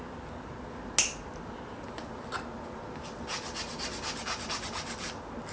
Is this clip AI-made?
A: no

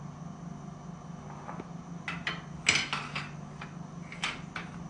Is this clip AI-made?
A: no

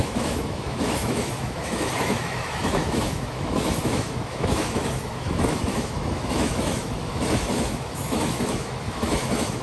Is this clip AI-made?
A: yes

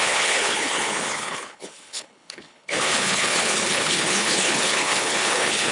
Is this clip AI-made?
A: yes